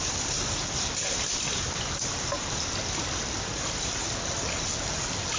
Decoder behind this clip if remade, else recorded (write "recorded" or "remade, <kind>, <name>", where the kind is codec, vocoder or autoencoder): recorded